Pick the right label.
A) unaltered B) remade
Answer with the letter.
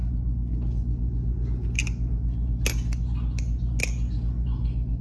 A